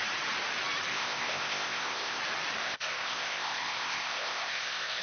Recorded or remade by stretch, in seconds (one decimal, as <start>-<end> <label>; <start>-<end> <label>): 0.0-0.9 recorded; 0.9-2.2 remade; 2.2-2.6 recorded; 2.6-5.0 remade